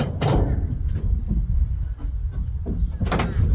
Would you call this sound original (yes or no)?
yes